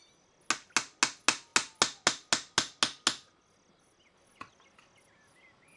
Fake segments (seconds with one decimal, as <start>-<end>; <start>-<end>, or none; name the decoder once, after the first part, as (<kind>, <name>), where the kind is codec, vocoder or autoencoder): none